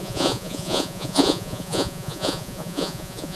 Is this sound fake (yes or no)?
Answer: yes